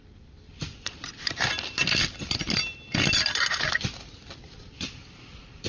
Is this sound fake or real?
real